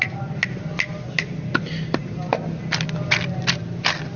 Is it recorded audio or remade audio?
recorded